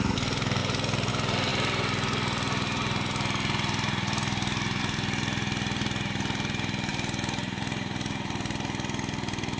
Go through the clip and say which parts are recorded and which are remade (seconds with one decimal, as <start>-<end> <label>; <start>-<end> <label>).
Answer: 0.0-9.6 recorded